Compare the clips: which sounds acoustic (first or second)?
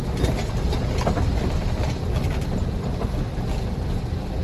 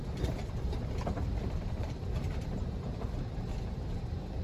first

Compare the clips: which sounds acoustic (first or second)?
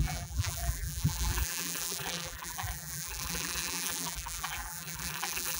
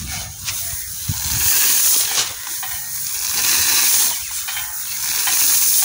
second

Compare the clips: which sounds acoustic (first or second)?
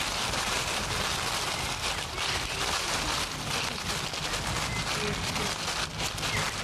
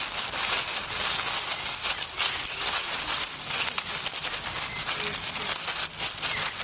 first